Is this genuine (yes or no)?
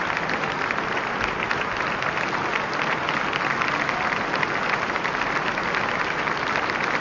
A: yes